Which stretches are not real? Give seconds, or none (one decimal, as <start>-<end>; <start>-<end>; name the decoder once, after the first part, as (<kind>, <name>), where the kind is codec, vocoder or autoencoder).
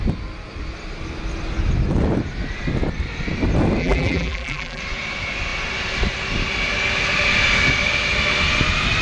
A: 3.8-4.8 (vocoder, BigVGAN v2)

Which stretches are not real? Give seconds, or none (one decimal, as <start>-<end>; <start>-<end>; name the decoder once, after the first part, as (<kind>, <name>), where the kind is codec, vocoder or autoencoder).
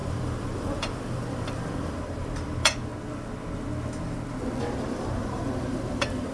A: 0.0-2.9 (vocoder, BigVGAN v2); 4.6-6.3